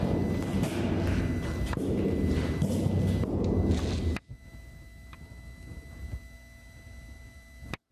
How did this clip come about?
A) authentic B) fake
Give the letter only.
A